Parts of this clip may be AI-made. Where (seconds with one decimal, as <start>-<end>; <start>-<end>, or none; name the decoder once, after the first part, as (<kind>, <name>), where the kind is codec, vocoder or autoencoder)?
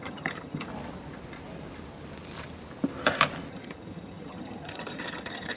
0.0-0.7 (vocoder, HiFi-GAN); 3.5-5.6